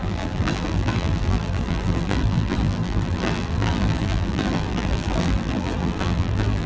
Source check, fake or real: fake